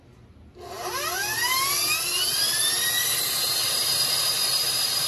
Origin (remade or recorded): recorded